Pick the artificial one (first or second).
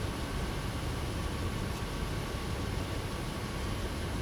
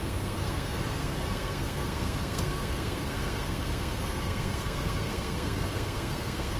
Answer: second